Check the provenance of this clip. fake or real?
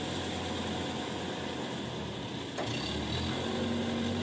real